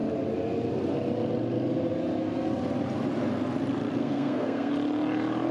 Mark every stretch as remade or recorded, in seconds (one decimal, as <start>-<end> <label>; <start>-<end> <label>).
0.0-4.0 recorded; 4.0-4.7 remade; 4.7-5.5 recorded

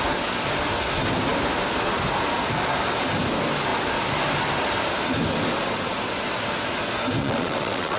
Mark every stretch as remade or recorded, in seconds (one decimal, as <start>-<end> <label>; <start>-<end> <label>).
0.0-7.2 recorded; 7.2-8.0 remade

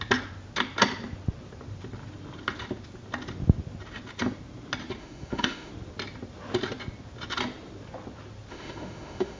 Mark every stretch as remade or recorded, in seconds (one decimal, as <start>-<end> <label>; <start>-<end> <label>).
0.0-5.0 recorded; 5.0-5.7 remade; 5.7-8.5 recorded; 8.5-9.4 remade